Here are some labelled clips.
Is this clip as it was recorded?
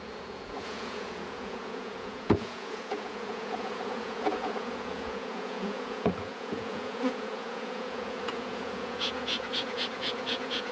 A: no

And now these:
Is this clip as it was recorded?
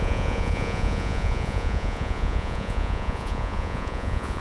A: no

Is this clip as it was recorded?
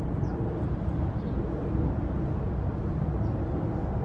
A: yes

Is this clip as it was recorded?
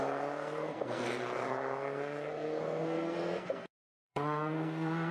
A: no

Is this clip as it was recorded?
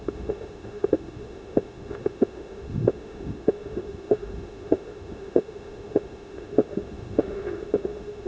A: no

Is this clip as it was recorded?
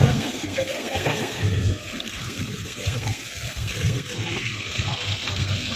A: no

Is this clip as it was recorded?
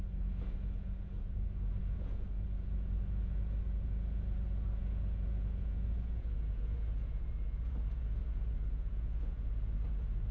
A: no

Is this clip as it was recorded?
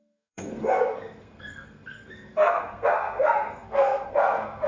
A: no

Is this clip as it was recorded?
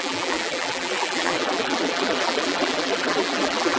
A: no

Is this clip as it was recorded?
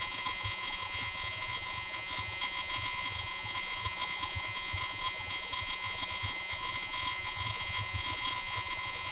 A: no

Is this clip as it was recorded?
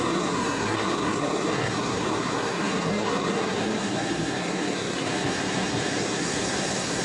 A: no